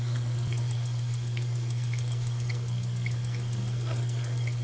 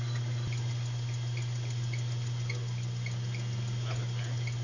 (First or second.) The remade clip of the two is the first